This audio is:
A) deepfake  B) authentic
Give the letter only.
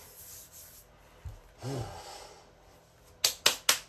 B